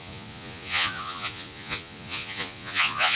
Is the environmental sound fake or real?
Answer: fake